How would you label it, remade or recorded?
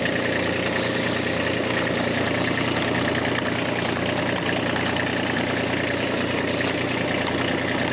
recorded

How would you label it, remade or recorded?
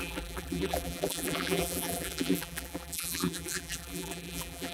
remade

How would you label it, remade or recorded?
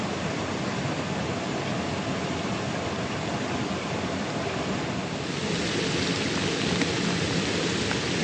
recorded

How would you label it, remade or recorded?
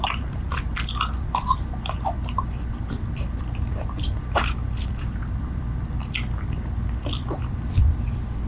remade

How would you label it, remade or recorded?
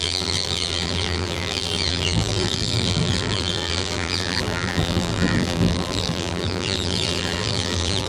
remade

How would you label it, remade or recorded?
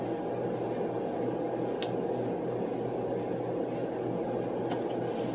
recorded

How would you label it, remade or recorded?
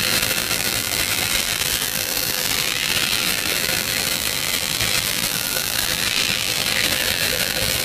remade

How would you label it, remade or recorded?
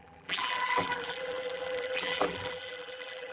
remade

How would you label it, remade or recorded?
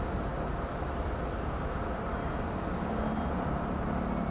recorded